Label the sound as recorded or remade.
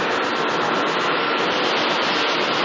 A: recorded